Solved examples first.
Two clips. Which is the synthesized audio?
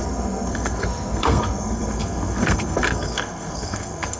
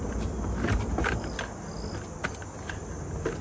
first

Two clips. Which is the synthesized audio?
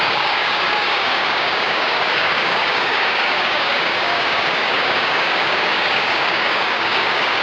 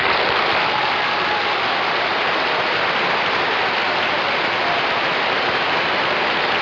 first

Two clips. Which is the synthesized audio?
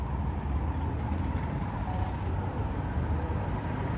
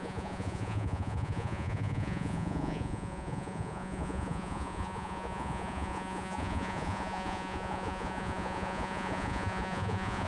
second